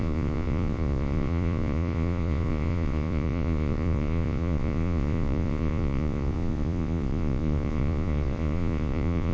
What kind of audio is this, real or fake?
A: fake